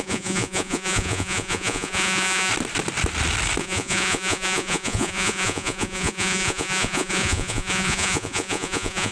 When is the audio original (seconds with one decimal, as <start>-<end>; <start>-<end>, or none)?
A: 2.5-3.6